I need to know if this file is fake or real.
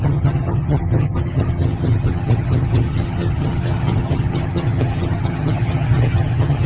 fake